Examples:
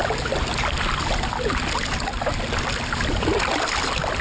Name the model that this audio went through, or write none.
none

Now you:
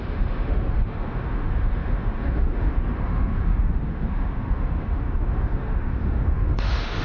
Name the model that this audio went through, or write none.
autoencoder, DAC-VAE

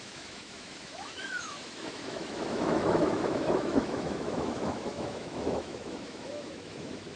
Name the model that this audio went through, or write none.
autoencoder, DAC-VAE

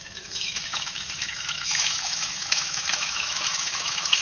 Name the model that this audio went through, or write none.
autoencoder, DAC-VAE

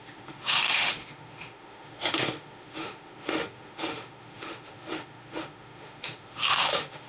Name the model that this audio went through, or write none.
autoencoder, DAC-VAE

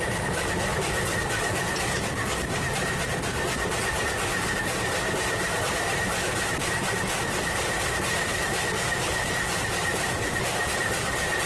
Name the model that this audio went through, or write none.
none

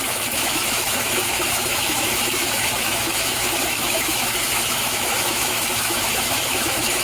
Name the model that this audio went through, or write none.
autoencoder, DAC-VAE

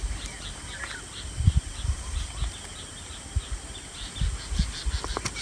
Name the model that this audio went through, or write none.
none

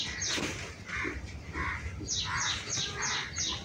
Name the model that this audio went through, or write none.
none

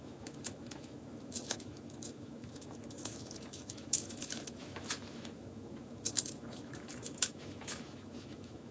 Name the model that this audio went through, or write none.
autoencoder, DAC-VAE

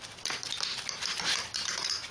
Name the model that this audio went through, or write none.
none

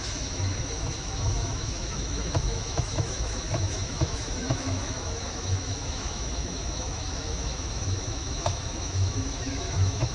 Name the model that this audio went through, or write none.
autoencoder, DAC-VAE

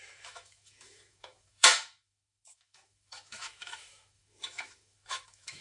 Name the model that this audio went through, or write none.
autoencoder, DAC-VAE